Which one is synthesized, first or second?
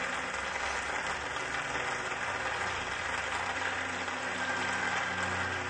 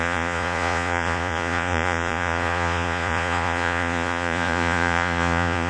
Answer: second